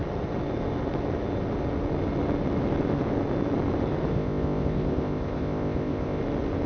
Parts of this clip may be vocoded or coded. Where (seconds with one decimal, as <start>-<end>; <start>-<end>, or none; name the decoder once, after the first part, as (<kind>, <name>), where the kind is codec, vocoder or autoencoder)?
4.1-6.2 (codec, ZipCodec)

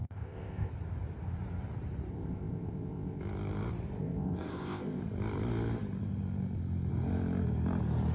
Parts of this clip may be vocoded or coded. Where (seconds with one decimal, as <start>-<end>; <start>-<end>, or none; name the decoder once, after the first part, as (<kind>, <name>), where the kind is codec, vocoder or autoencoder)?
0.0-0.7 (codec, ZipCodec); 2.1-3.2; 4.0-5.0